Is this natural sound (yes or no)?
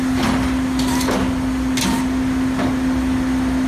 yes